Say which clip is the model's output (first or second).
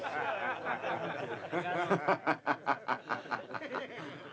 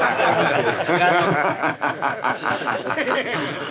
second